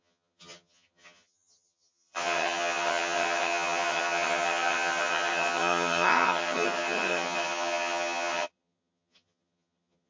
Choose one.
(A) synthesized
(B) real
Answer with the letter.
A